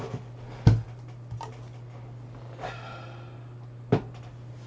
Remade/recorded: recorded